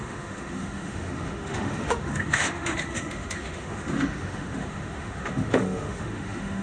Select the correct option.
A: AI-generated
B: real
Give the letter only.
A